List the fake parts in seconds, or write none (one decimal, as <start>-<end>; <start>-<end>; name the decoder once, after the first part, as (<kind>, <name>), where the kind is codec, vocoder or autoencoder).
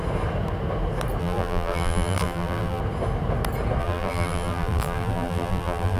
1.2-2.8 (vocoder, BigVGAN v2); 3.8-6.0